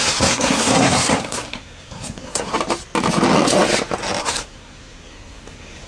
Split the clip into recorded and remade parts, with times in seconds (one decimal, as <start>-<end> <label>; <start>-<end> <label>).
0.0-2.5 remade; 2.5-4.2 recorded; 4.2-5.9 remade